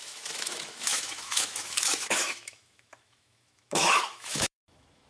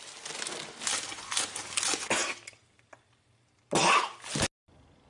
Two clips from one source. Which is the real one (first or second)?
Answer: second